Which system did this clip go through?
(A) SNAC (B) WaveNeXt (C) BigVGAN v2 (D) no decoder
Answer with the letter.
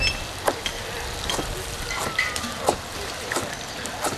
C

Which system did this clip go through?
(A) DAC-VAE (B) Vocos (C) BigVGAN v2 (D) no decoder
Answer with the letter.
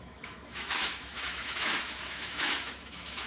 A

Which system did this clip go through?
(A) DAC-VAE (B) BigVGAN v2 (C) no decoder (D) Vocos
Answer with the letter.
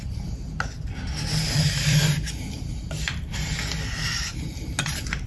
C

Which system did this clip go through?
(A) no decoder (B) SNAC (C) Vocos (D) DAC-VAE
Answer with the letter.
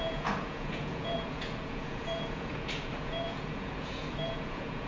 C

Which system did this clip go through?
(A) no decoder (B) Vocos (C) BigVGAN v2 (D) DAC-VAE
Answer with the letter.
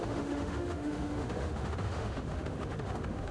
D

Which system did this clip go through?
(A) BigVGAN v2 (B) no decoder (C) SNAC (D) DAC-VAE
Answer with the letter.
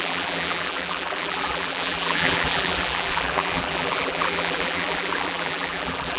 A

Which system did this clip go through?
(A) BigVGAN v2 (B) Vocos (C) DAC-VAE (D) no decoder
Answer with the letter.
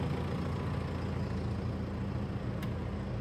D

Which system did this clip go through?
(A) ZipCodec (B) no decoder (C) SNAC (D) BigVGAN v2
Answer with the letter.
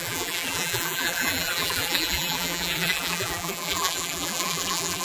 D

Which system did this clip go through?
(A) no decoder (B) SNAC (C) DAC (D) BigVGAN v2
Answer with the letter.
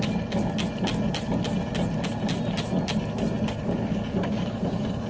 A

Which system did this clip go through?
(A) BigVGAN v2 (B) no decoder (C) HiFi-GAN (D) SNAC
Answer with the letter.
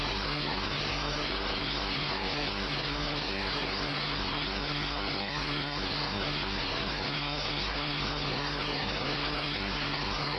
D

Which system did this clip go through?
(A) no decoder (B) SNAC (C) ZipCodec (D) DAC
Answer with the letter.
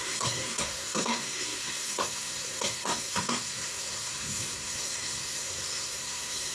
B